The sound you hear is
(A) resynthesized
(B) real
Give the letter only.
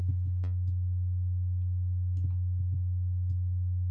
B